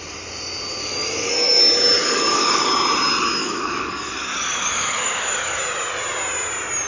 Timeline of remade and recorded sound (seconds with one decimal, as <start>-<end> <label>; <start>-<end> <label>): 0.0-0.8 recorded; 0.8-1.6 remade; 1.6-2.0 recorded; 2.0-2.7 remade; 2.7-3.4 recorded; 3.4-5.6 remade; 5.6-6.9 recorded